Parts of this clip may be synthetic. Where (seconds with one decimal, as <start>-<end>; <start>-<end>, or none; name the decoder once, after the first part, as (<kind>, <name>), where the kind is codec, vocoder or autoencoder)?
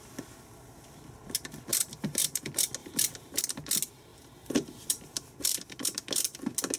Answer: 1.7-2.4 (vocoder, BigVGAN v2); 2.8-3.4; 4.1-5.6